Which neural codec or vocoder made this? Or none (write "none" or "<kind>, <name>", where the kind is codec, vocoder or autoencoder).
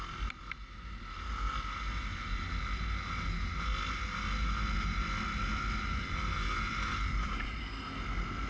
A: none